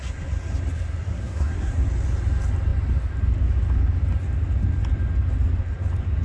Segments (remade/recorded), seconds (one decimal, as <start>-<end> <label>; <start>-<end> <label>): 0.0-1.1 recorded; 1.1-1.7 remade; 1.7-6.2 recorded